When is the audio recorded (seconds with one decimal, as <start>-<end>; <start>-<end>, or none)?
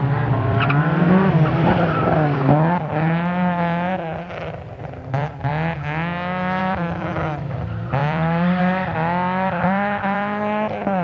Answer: 5.5-6.6